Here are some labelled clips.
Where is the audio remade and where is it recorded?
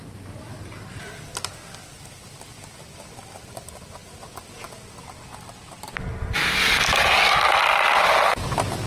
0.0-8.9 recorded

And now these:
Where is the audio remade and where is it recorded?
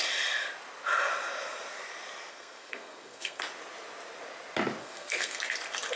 0.0-2.3 recorded; 2.3-3.4 remade; 3.4-4.8 recorded; 4.8-5.4 remade; 5.4-6.0 recorded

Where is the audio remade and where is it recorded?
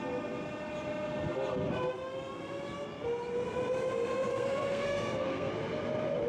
0.0-4.3 recorded; 4.3-5.5 remade; 5.5-6.3 recorded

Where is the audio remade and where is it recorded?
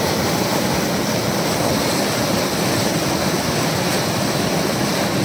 0.0-5.2 recorded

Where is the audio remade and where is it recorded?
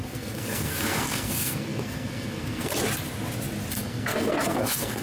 0.0-2.7 remade; 2.7-3.7 recorded; 3.7-5.0 remade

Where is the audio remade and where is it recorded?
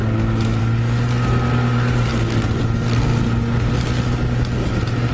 0.0-5.1 recorded